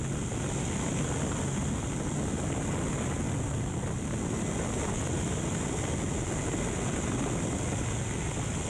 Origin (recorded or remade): recorded